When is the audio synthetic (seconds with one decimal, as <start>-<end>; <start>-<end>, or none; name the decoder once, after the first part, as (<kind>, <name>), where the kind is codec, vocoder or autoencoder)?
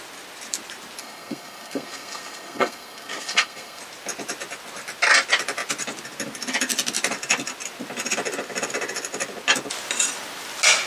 1.0-3.8 (codec, SNAC)